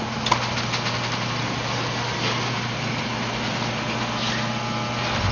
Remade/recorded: recorded